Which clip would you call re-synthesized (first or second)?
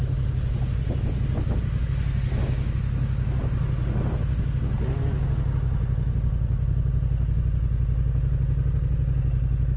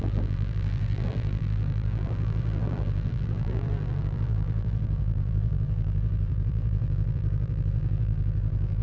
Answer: second